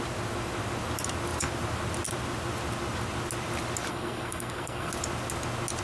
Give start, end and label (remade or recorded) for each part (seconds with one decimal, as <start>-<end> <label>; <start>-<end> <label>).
0.0-3.9 recorded; 3.9-4.9 remade; 4.9-5.8 recorded